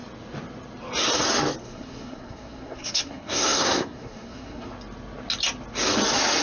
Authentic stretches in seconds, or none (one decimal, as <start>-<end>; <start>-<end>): 0.0-1.6; 4.7-6.4